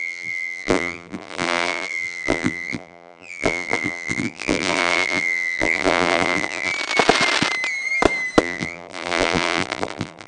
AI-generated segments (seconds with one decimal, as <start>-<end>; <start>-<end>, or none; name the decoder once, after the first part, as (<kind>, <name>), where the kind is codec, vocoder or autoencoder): 0.0-6.7 (vocoder, BigVGAN v2); 8.4-10.3